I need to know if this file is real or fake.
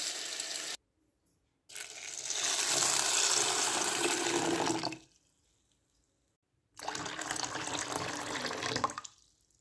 real